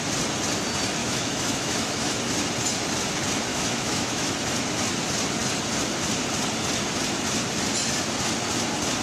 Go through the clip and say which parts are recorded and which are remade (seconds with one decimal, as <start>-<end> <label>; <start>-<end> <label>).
0.0-1.0 recorded; 1.0-2.2 remade; 2.2-3.5 recorded; 3.5-4.3 remade; 4.3-9.0 recorded